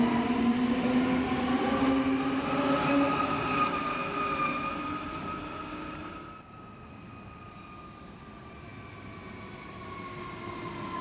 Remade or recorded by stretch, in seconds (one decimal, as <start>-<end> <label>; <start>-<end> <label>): 0.0-11.0 recorded